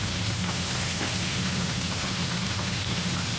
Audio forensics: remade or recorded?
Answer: remade